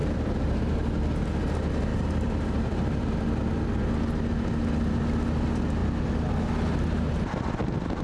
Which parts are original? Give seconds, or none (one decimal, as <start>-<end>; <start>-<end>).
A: 0.6-1.9; 3.1-8.0